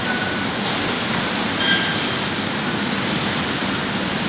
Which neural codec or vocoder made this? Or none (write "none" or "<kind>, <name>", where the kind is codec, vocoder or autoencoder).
none